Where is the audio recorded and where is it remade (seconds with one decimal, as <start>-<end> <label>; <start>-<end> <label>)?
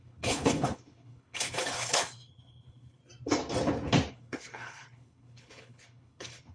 0.0-3.0 remade; 3.0-4.1 recorded; 4.1-6.5 remade